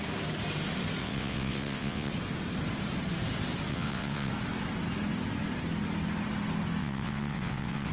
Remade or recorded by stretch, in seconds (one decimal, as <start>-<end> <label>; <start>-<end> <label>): 0.0-1.0 recorded; 1.0-2.1 remade; 2.1-3.7 recorded; 3.7-4.3 remade; 4.3-6.8 recorded; 6.8-7.9 remade